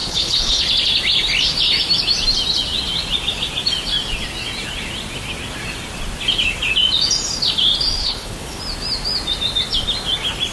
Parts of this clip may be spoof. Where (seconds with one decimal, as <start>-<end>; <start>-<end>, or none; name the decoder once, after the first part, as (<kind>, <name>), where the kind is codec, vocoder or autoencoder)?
0.0-0.6 (codec, HILCodec); 8.0-8.6